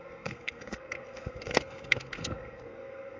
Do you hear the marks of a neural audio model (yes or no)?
yes